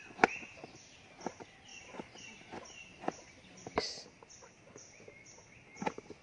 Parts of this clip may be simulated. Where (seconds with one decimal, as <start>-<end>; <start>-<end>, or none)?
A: none